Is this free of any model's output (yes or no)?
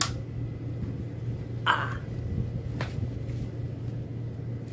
yes